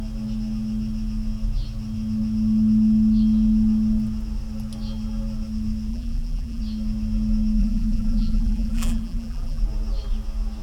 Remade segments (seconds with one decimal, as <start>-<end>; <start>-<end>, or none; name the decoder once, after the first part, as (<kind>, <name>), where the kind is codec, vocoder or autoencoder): 5.9-6.6 (vocoder, BigVGAN v2); 7.6-9.6

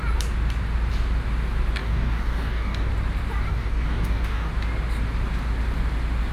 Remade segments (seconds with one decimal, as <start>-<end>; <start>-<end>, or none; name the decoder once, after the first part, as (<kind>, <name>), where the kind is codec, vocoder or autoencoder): 1.8-2.9 (codec, DAC); 3.5-4.5

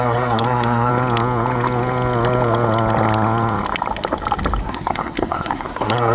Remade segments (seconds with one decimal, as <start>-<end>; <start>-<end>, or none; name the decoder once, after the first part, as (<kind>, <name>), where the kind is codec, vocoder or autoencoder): 0.0-0.9 (codec, SNAC); 4.6-6.1

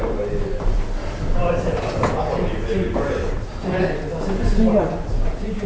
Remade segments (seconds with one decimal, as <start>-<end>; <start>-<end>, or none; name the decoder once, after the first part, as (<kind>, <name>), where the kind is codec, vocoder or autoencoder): none

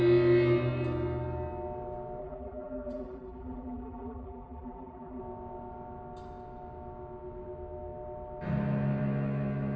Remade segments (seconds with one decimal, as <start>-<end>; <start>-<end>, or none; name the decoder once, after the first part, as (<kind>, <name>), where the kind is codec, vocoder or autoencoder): 2.2-5.2 (vocoder, BigVGAN v2)